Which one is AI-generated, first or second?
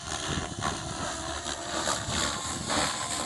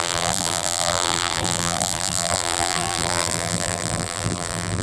second